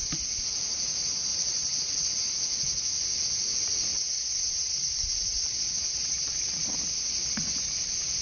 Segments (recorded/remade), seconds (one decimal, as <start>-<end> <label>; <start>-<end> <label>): 0.0-1.3 recorded; 1.3-2.3 remade; 2.3-3.9 recorded; 3.9-6.5 remade; 6.5-8.2 recorded